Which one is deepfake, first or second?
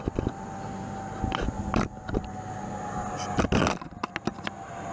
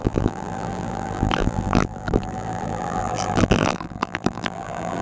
second